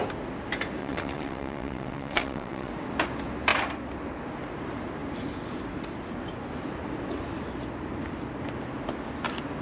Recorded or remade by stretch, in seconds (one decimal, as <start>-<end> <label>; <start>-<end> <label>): 0.0-0.8 recorded; 0.8-2.7 remade; 2.7-9.6 recorded